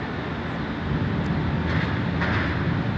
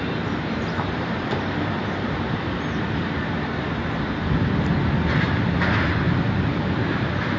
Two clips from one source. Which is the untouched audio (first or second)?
first